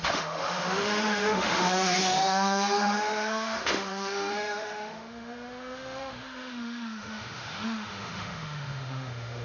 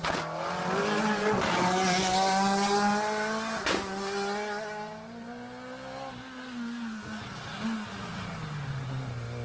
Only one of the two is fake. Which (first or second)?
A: first